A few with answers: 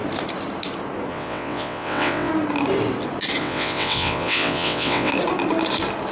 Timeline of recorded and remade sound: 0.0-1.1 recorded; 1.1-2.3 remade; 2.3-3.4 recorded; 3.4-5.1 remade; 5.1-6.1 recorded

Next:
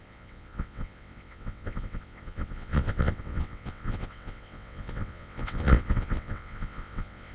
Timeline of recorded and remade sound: 0.0-7.3 remade

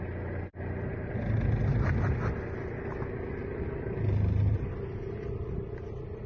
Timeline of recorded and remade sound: 0.0-6.3 recorded

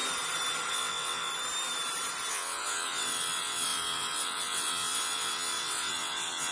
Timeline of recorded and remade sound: 0.0-0.7 recorded; 0.7-1.3 remade; 1.3-2.3 recorded; 2.3-6.5 remade

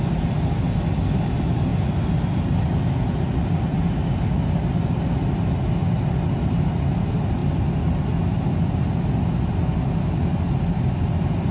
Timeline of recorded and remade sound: 0.0-11.5 recorded

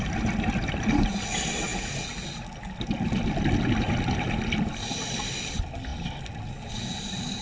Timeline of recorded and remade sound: 0.0-7.4 recorded

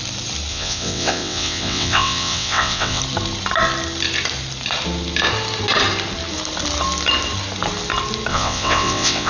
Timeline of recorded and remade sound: 0.0-0.5 recorded; 0.5-3.0 remade; 3.0-8.3 recorded; 8.3-9.3 remade